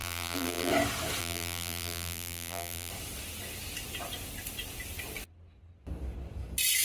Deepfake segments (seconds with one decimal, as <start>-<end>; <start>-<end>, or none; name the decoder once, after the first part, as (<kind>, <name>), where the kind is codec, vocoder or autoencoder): 0.0-0.7 (vocoder, BigVGAN v2); 1.2-2.9